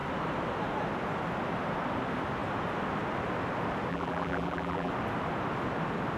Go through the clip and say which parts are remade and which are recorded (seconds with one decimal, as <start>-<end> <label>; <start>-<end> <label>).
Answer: 0.0-3.9 recorded; 3.9-4.9 remade; 4.9-6.2 recorded